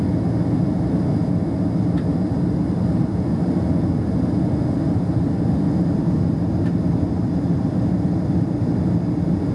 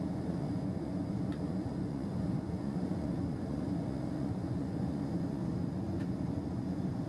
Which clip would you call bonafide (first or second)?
first